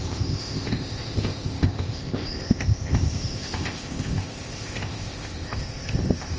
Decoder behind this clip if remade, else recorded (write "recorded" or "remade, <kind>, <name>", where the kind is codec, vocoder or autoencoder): remade, codec, ZipCodec